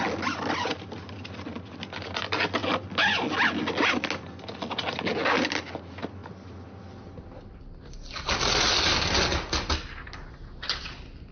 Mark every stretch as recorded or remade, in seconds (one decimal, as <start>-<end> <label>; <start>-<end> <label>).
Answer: 0.0-11.3 recorded